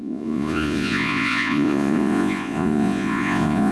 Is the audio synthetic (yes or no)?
yes